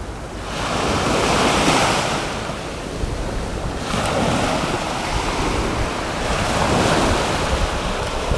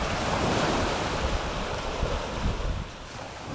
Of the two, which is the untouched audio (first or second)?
first